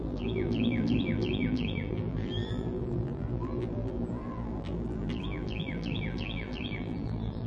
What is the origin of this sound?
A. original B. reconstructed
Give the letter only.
B